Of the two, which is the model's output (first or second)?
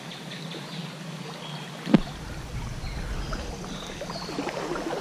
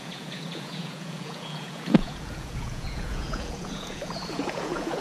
second